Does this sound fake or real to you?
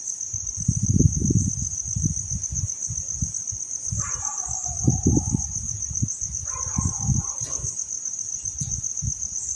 real